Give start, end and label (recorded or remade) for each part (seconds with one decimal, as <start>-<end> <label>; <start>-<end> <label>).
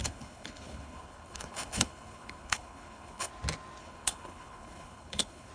0.0-3.3 remade; 3.3-3.8 recorded; 3.8-5.5 remade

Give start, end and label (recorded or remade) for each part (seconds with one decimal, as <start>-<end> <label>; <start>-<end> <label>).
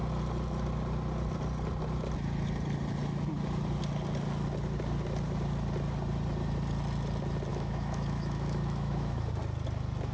0.0-7.5 recorded; 7.5-9.3 remade; 9.3-10.1 recorded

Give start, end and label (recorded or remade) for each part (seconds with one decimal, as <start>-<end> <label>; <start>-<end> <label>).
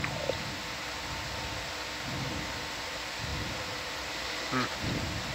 0.0-5.3 recorded